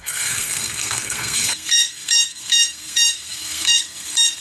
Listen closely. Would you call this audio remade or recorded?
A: remade